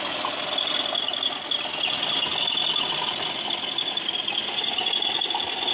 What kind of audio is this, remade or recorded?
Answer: recorded